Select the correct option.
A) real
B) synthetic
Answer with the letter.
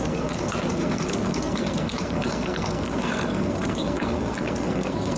B